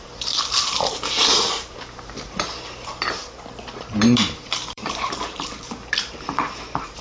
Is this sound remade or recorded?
remade